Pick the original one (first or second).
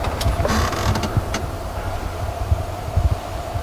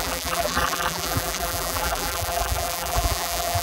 first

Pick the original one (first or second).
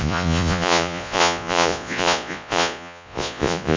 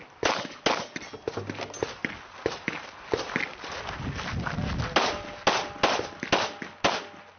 second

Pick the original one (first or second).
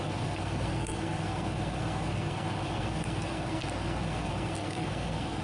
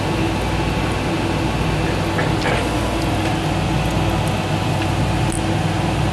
second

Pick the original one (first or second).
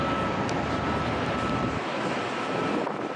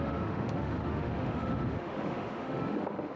first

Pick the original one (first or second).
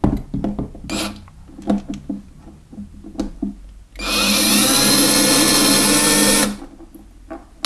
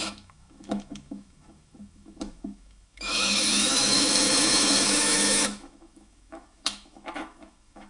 first